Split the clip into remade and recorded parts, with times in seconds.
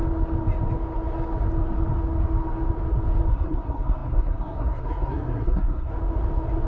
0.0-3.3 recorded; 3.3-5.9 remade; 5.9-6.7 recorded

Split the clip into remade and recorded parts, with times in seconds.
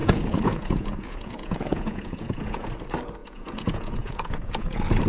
0.0-2.7 remade; 2.7-3.2 recorded; 3.2-5.1 remade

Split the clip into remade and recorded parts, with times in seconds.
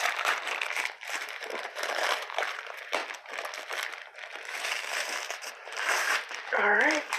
0.0-3.0 remade; 3.0-4.5 recorded; 4.5-7.2 remade